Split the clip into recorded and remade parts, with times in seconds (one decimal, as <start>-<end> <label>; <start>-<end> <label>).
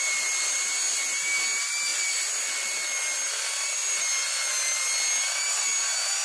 0.0-6.2 recorded